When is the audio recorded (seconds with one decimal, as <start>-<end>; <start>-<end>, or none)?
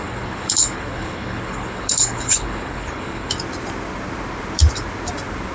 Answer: 3.3-5.5